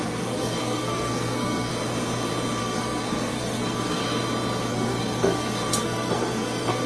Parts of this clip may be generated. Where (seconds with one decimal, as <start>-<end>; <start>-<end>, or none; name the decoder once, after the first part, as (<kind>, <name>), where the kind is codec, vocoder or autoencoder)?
0.0-1.7 (codec, SNAC); 2.6-4.0; 4.7-6.9